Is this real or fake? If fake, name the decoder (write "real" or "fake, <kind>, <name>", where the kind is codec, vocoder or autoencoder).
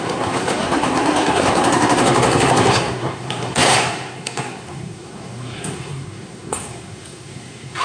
fake, codec, SNAC